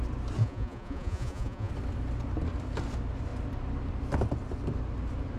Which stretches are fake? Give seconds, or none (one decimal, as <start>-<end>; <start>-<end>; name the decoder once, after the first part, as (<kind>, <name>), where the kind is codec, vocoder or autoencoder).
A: 0.4-1.7 (vocoder, Vocos)